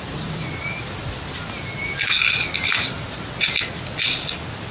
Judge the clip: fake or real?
real